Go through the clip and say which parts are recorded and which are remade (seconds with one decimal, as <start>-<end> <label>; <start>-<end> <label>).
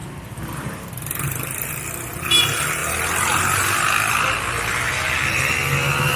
0.0-6.2 recorded